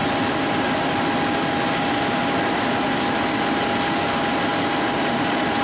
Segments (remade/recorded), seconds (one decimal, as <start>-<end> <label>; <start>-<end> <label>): 0.0-5.6 recorded